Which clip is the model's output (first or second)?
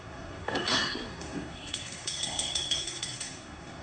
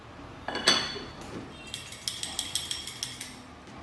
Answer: first